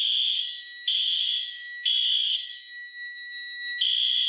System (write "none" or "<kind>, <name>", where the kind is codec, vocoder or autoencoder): autoencoder, DAC-VAE